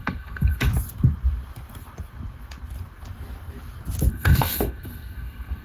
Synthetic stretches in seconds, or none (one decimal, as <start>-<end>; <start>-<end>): 0.0-0.7; 4.1-5.6